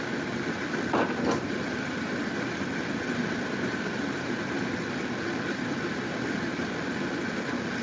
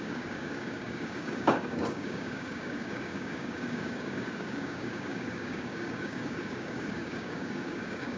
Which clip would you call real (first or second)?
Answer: first